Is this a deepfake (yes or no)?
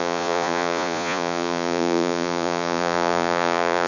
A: yes